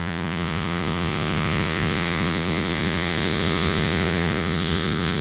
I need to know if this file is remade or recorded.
remade